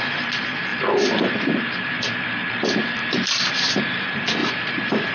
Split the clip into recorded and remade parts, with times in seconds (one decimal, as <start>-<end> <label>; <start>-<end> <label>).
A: 0.0-0.7 recorded; 0.7-3.8 remade; 3.8-4.4 recorded; 4.4-5.1 remade